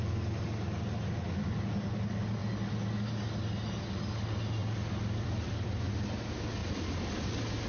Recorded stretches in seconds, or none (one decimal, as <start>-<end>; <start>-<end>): 0.0-4.6; 5.9-6.6; 7.2-7.7